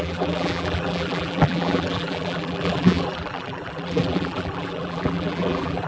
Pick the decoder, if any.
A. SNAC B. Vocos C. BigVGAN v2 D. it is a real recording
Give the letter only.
C